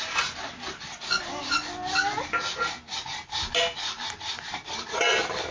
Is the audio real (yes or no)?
yes